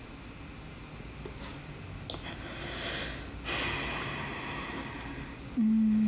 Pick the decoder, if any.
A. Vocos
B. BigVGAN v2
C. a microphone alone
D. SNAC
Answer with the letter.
C